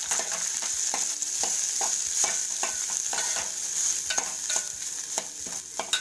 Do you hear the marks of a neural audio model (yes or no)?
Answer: no